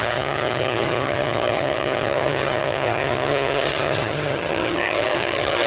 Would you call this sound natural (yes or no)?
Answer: no